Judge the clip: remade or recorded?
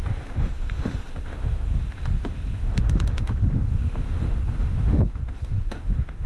remade